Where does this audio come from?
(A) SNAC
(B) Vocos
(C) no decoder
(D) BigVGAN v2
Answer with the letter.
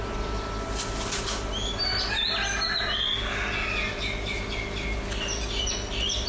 C